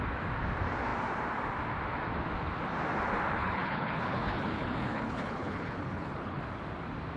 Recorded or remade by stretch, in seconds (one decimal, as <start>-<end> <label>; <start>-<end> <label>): 0.0-3.4 recorded; 3.4-6.4 remade; 6.4-7.2 recorded